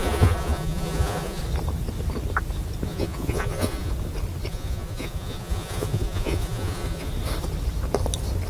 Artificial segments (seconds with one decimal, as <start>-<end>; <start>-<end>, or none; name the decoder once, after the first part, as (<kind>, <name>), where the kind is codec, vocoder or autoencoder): 0.0-1.4 (vocoder, Vocos); 2.9-3.9; 4.5-7.1